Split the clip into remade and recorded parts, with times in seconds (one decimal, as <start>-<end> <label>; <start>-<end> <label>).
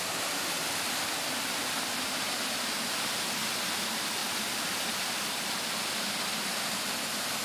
0.0-4.2 recorded; 4.2-5.5 remade; 5.5-7.4 recorded